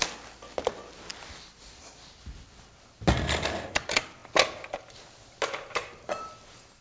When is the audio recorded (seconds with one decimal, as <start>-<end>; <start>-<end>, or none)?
0.0-6.8